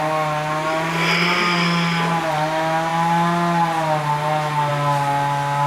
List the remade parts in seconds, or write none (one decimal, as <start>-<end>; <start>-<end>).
none